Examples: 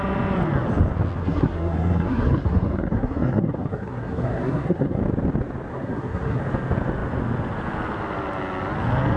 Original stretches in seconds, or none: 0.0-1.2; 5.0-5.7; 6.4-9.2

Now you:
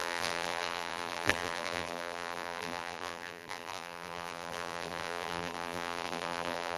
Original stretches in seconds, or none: none

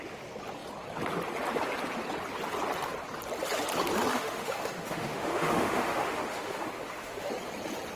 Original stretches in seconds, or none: 0.0-4.1; 7.3-8.0

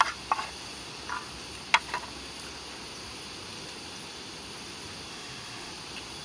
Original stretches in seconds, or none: 0.0-5.1; 5.7-6.2

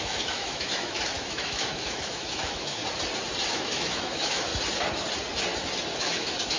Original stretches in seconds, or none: 2.8-3.5; 4.5-6.0

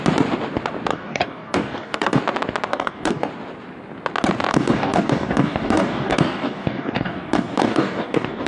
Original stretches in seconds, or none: 0.0-0.9; 2.2-2.7; 3.3-4.5

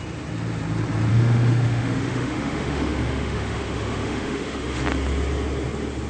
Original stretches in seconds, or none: 0.0-1.1; 4.8-6.1